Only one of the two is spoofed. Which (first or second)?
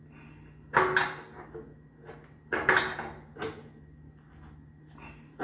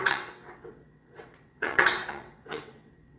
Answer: second